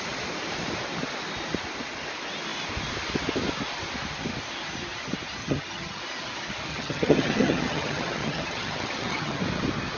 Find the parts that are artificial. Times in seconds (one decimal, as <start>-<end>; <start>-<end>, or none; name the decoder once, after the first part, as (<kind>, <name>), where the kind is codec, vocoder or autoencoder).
5.4-6.0 (vocoder, HiFi-GAN); 6.7-9.4